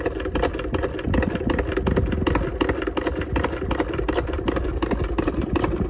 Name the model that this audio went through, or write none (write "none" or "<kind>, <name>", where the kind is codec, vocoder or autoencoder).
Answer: none